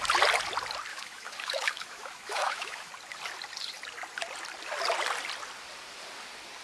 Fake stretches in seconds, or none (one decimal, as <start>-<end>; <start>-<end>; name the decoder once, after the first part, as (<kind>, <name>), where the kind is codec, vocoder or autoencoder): 0.9-2.9 (autoencoder, DAC-VAE)